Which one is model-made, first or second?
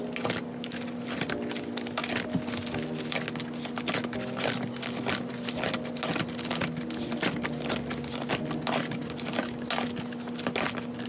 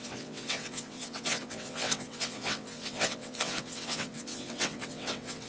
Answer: second